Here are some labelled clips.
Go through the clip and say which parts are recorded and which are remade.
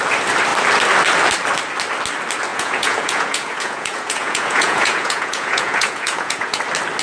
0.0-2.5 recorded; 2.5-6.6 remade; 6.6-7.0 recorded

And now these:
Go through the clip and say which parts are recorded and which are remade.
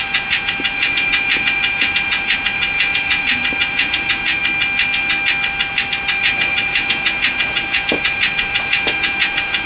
0.0-4.4 remade; 4.4-6.2 recorded; 6.2-9.7 remade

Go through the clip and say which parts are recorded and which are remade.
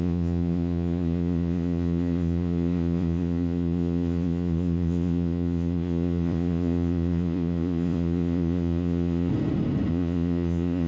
0.0-9.3 remade; 9.3-9.9 recorded; 9.9-10.9 remade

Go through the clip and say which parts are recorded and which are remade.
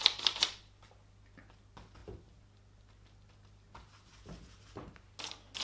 0.0-5.6 recorded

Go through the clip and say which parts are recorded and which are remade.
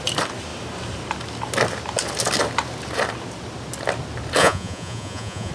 0.0-4.4 recorded; 4.4-5.5 remade